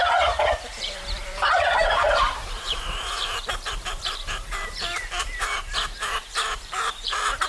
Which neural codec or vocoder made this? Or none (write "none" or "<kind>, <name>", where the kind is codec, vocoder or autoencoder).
vocoder, BigVGAN v2